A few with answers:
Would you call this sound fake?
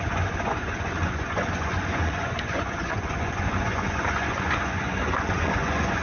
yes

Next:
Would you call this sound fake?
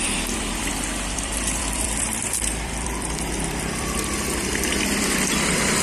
yes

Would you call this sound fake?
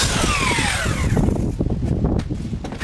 no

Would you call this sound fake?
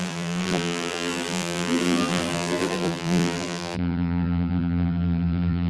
yes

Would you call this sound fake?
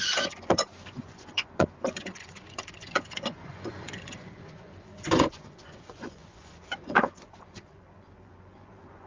yes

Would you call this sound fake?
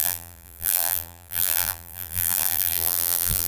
yes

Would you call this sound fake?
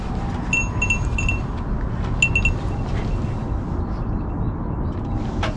no